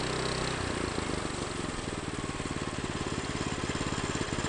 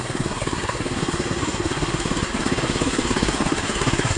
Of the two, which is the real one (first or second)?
first